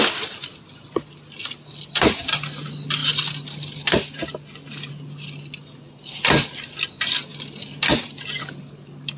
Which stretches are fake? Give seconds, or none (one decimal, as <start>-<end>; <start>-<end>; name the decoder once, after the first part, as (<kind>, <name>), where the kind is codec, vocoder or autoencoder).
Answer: none